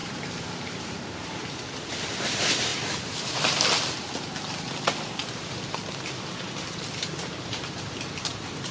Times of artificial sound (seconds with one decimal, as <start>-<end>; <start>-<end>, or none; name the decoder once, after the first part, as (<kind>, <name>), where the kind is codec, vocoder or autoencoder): 0.0-1.8 (vocoder, BigVGAN v2); 2.7-3.6; 5.2-8.7